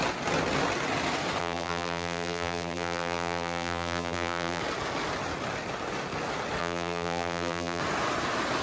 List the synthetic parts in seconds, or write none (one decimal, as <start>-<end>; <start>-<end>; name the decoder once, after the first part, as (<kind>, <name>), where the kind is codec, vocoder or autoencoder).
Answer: 1.4-4.6 (vocoder, BigVGAN v2); 6.6-7.8